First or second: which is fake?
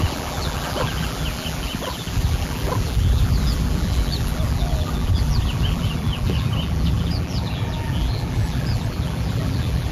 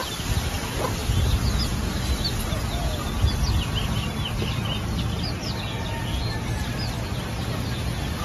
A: first